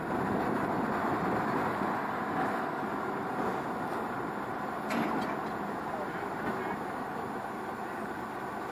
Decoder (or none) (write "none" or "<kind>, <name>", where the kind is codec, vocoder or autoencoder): none